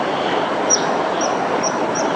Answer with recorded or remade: remade